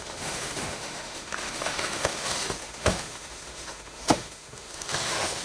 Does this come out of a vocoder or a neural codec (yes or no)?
yes